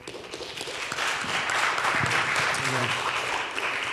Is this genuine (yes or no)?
no